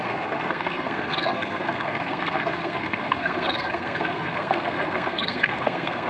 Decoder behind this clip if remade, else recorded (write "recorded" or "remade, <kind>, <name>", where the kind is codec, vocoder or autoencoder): remade, codec, SNAC